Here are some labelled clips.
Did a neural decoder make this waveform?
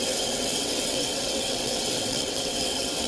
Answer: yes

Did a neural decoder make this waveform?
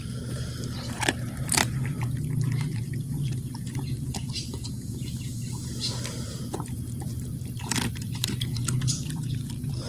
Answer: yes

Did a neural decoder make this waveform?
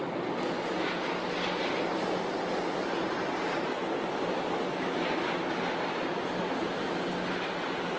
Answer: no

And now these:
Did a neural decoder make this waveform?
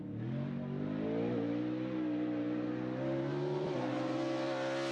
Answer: no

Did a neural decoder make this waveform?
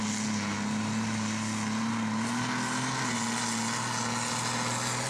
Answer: no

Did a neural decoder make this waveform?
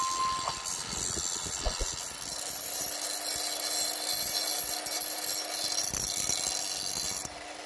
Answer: no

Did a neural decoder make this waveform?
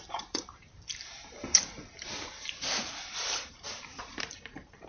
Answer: yes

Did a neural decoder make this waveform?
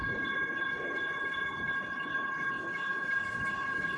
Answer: yes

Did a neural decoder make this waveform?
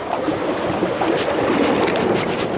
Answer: no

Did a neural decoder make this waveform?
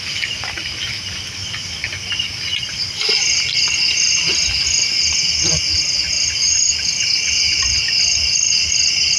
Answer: no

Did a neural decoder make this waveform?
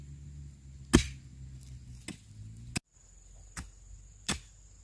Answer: no